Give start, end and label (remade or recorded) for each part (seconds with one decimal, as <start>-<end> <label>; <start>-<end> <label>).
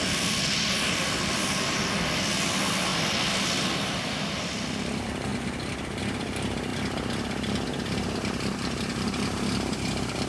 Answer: 0.0-2.9 remade; 2.9-3.6 recorded; 3.6-5.3 remade; 5.3-6.0 recorded; 6.0-6.7 remade; 6.7-7.2 recorded; 7.2-10.3 remade